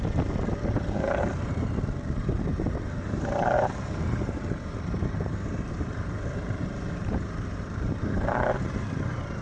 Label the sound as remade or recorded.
remade